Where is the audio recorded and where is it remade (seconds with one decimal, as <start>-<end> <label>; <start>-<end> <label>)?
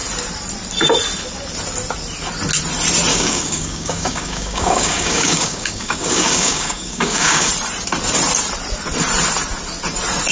0.0-3.1 recorded; 3.1-7.5 remade; 7.5-10.3 recorded